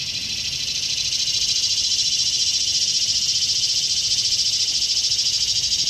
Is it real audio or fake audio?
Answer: fake